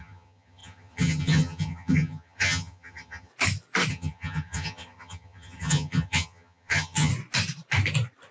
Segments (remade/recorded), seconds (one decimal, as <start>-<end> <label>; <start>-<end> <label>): 0.0-3.3 remade; 3.3-3.9 recorded; 3.9-7.1 remade; 7.1-8.3 recorded